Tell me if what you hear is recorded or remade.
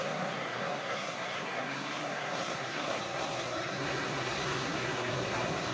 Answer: remade